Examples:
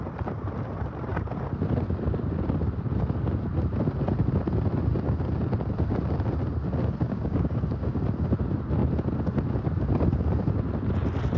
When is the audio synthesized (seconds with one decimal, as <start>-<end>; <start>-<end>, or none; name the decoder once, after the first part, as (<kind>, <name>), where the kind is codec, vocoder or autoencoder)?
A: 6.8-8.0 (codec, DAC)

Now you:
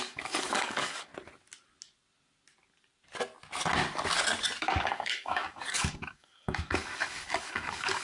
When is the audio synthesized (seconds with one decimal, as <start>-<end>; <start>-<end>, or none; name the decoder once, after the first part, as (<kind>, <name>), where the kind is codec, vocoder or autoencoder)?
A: 0.0-1.1 (codec, DAC); 4.6-8.0

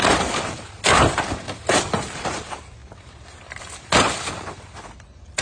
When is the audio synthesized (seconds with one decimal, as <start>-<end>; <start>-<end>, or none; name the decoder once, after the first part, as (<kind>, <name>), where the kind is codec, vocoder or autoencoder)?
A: none